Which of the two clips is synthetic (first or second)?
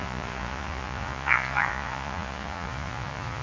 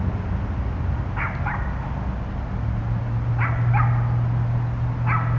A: first